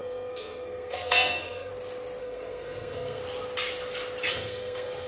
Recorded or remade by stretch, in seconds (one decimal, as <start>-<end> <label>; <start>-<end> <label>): 0.0-1.7 remade; 1.7-2.2 recorded; 2.2-3.2 remade; 3.2-4.3 recorded; 4.3-5.1 remade